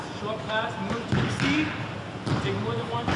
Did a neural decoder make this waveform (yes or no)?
no